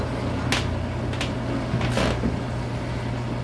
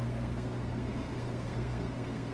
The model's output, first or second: second